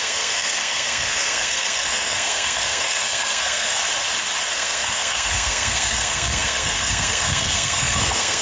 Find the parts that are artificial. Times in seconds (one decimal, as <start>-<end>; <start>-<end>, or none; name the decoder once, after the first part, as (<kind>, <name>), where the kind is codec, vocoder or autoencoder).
0.0-3.8 (codec, SNAC); 4.5-8.4